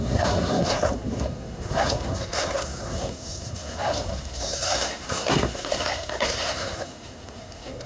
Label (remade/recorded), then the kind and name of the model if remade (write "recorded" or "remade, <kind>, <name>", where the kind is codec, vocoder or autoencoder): remade, codec, SNAC